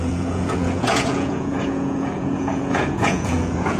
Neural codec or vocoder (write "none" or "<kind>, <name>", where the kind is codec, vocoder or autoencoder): vocoder, Vocos